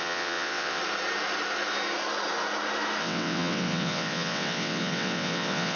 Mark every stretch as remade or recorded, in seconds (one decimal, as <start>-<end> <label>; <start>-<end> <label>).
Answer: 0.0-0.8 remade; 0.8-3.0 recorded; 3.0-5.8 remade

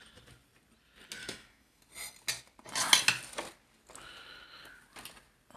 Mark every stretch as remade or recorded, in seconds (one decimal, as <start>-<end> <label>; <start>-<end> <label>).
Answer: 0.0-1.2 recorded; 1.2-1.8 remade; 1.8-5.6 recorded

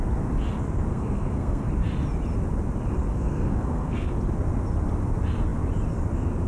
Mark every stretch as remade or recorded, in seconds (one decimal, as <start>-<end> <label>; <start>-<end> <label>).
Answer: 0.0-0.9 recorded; 0.9-1.7 remade; 1.7-3.1 recorded; 3.1-4.1 remade; 4.1-6.5 recorded

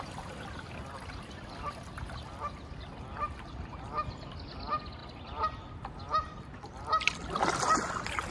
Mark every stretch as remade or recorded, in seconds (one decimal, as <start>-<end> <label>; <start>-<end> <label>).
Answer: 0.0-8.3 recorded